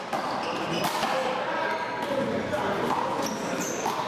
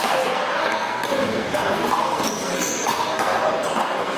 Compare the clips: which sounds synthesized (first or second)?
second